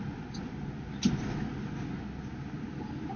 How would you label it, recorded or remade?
recorded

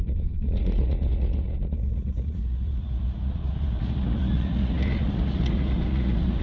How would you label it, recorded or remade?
remade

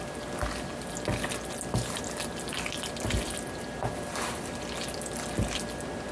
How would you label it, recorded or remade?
recorded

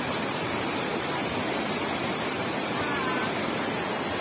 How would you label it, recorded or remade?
recorded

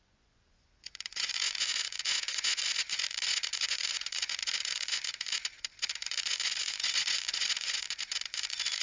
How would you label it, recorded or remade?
remade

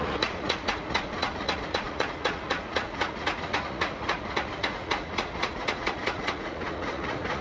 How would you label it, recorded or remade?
remade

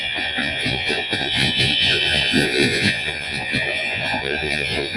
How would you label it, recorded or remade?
remade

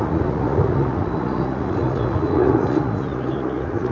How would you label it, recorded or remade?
remade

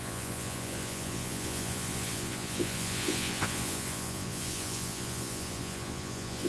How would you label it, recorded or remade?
remade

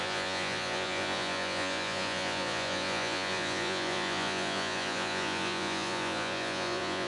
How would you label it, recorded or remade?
remade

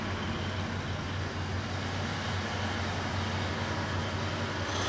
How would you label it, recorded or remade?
recorded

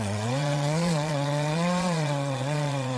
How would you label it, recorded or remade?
remade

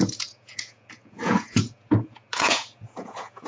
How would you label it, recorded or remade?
remade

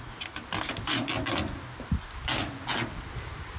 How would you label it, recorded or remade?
recorded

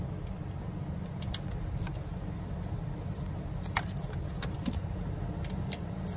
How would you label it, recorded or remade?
recorded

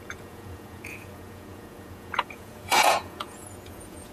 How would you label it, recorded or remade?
remade